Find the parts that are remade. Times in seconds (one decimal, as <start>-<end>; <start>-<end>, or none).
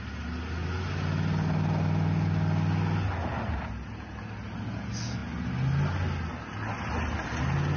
none